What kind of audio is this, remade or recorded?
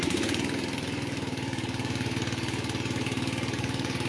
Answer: remade